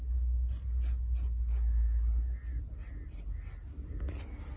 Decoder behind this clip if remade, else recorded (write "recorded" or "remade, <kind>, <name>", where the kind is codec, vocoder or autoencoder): recorded